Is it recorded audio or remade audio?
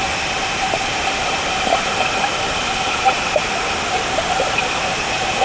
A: recorded